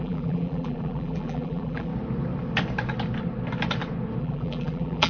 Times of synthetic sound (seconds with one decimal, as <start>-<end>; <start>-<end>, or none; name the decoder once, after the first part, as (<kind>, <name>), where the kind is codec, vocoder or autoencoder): 0.0-1.9 (vocoder, BigVGAN v2); 4.2-5.1